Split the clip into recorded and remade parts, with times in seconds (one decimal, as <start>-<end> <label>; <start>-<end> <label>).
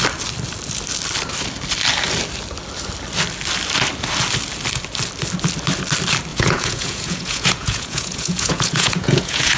0.0-6.3 recorded; 6.3-9.6 remade